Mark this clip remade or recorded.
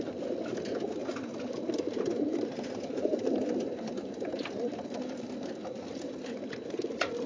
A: recorded